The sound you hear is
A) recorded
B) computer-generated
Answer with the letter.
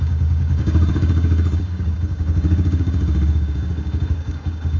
B